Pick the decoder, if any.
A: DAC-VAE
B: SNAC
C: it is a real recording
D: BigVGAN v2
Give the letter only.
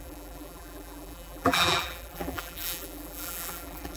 D